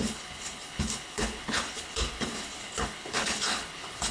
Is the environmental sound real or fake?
fake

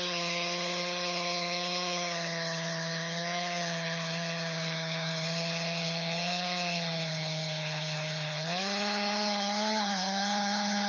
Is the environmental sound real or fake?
fake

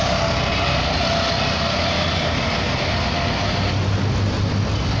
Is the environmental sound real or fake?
real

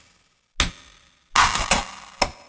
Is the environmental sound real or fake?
real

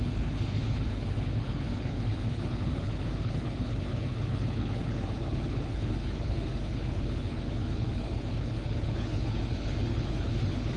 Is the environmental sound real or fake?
fake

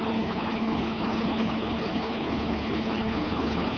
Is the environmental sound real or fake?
fake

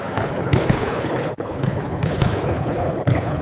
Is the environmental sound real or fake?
fake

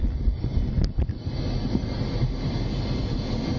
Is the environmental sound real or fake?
real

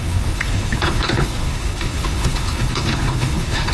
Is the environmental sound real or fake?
fake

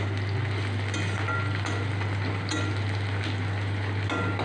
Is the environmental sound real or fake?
real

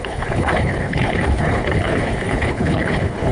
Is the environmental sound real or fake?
fake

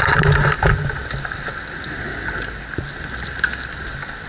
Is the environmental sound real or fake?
real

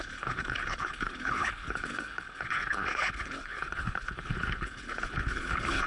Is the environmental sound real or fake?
fake